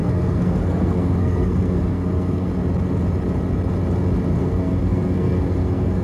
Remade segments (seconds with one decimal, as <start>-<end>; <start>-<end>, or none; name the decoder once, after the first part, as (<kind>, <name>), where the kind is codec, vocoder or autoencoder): 0.0-2.5 (codec, SNAC); 4.4-6.0